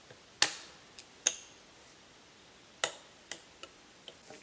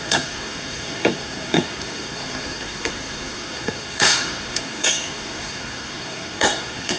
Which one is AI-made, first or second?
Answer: second